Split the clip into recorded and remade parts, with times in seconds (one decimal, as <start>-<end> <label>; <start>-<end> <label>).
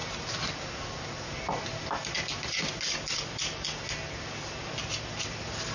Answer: 0.0-5.7 recorded